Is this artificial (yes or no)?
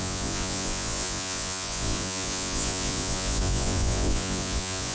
yes